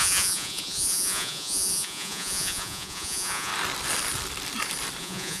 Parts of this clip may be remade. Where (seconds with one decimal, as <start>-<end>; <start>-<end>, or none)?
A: 0.0-3.5; 5.0-5.4